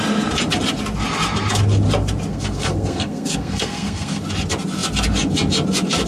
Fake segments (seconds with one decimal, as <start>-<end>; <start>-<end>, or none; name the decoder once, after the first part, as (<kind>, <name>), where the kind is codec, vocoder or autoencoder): 2.3-4.2 (codec, SNAC)